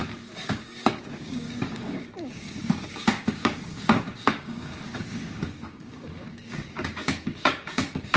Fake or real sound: fake